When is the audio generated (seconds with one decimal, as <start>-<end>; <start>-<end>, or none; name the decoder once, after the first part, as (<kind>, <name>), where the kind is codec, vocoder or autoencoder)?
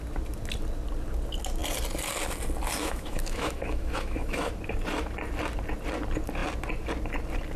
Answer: 2.8-4.5 (autoencoder, DAC-VAE)